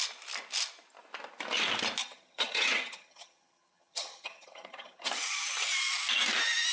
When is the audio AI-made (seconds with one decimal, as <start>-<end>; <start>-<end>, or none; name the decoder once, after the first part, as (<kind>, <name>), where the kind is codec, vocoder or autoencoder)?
2.0-5.1 (vocoder, HiFi-GAN)